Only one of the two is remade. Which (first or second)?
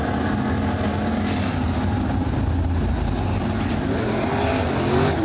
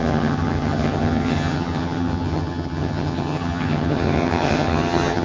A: second